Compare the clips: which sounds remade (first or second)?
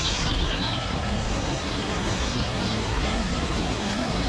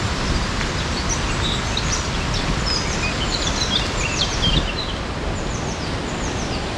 first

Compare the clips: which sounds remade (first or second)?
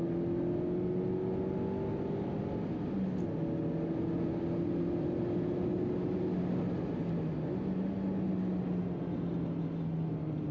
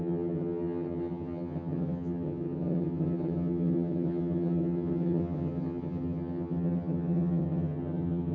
second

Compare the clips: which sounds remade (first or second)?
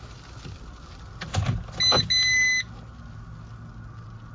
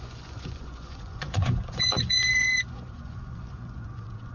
second